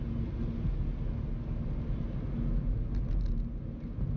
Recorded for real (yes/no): yes